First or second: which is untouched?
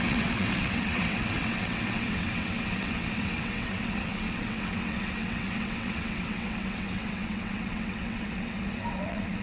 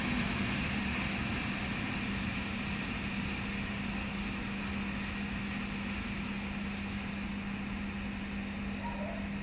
second